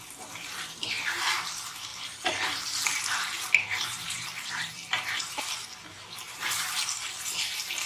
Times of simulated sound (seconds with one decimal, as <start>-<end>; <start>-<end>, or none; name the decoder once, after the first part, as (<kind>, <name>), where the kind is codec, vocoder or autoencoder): 0.0-7.9 (vocoder, BigVGAN v2)